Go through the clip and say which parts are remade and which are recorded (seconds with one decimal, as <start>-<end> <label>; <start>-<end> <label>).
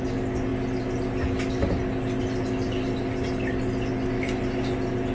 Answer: 0.0-5.1 recorded